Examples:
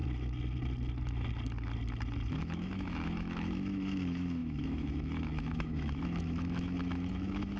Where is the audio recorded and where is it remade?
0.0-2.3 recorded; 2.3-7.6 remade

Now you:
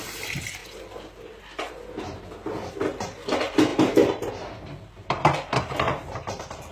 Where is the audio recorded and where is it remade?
0.0-0.6 remade; 0.6-1.7 recorded; 1.7-6.7 remade

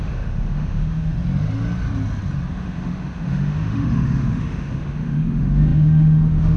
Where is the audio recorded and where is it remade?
0.0-1.1 remade; 1.1-2.5 recorded; 2.5-6.6 remade

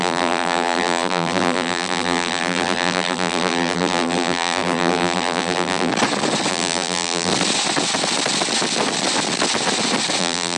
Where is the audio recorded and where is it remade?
0.0-5.9 remade; 5.9-6.5 recorded; 6.5-7.3 remade; 7.3-10.2 recorded; 10.2-10.6 remade

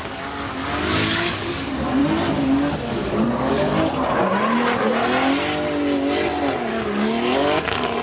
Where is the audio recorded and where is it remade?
0.0-2.0 remade; 2.0-2.9 recorded; 2.9-3.7 remade; 3.7-6.7 recorded; 6.7-8.0 remade